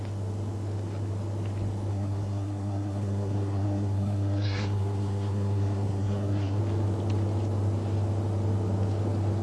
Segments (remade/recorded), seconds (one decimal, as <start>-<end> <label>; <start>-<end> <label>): 0.0-1.9 recorded; 1.9-6.6 remade; 6.6-9.4 recorded